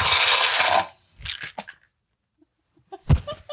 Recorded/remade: recorded